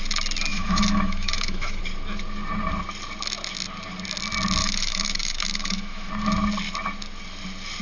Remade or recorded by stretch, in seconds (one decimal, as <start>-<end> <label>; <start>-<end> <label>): 0.0-0.5 recorded; 0.5-1.8 remade; 1.8-4.6 recorded; 4.6-6.1 remade; 6.1-7.8 recorded

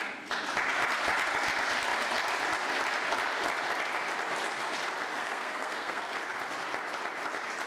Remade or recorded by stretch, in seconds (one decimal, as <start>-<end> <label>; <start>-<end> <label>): 0.0-5.2 recorded; 5.2-6.2 remade; 6.2-7.7 recorded

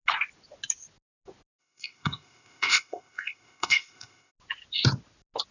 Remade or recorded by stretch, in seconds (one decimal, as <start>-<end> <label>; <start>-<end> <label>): 0.0-1.6 recorded; 1.6-4.3 remade; 4.3-5.5 recorded

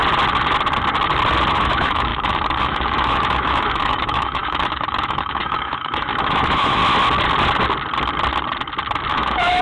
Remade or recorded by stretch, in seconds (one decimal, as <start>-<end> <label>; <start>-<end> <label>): 0.0-1.5 recorded; 1.5-6.8 remade; 6.8-9.1 recorded; 9.1-9.6 remade

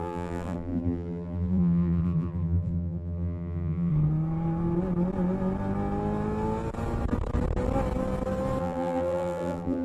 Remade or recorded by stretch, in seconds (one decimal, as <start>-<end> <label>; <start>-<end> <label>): 0.0-3.9 remade; 3.9-8.6 recorded; 8.6-9.8 remade

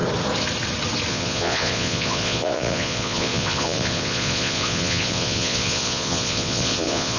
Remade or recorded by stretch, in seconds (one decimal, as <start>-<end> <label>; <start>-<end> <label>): 0.0-1.1 recorded; 1.1-7.2 remade

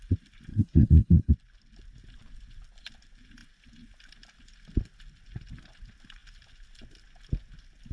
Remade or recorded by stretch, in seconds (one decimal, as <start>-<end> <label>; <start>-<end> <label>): 0.0-0.5 recorded; 0.5-1.3 remade; 1.3-7.9 recorded